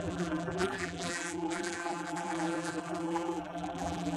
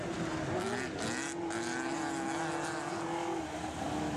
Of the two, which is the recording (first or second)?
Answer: second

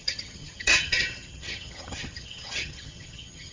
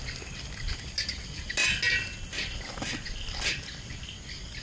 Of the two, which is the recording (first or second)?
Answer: second